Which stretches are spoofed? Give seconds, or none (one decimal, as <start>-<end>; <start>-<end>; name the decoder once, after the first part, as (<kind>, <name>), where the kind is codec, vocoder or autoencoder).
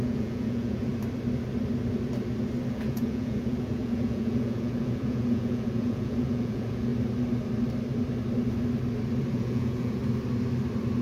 0.0-0.9 (vocoder, Vocos); 2.7-6.9; 9.3-10.0